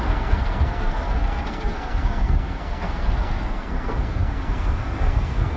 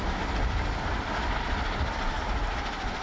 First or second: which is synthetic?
first